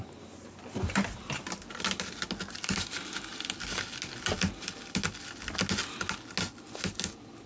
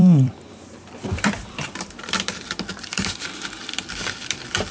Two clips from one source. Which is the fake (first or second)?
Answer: second